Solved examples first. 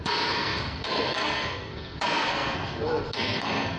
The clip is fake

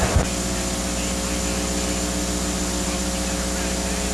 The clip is real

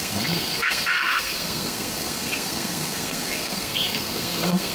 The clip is fake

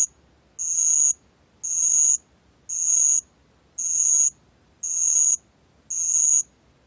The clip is real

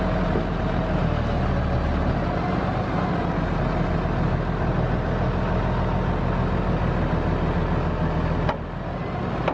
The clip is real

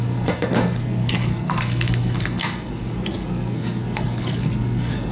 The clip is fake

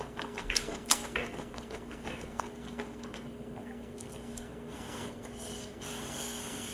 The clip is fake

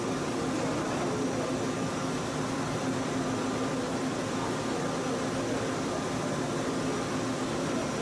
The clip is real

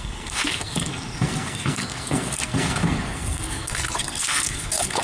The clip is fake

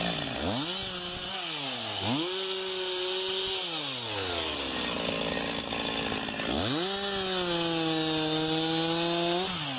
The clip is real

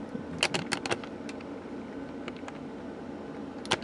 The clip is real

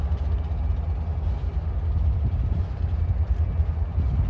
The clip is real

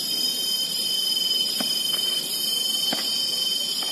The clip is real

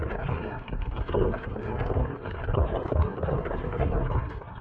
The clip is fake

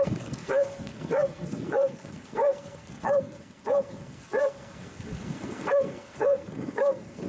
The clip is fake